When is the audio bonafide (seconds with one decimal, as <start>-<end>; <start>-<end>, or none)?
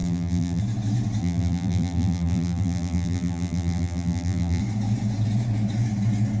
0.6-1.2; 4.6-6.4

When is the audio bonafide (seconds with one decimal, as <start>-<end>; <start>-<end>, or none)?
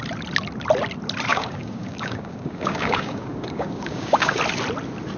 0.0-1.3; 4.4-5.2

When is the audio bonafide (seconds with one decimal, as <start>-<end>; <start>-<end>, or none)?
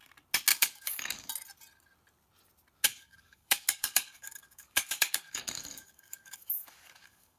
0.0-0.5; 1.3-2.9